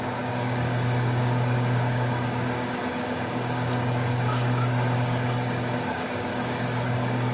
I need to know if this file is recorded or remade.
remade